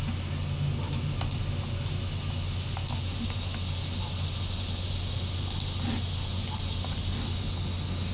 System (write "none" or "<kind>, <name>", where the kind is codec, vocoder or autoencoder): none